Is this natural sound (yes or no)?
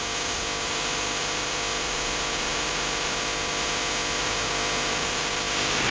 yes